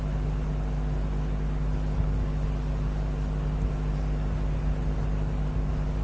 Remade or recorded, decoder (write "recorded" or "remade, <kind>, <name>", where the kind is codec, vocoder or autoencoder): recorded